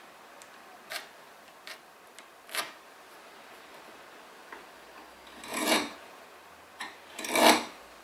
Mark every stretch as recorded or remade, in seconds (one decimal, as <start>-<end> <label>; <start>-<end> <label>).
0.0-5.5 recorded; 5.5-6.2 remade; 6.2-8.0 recorded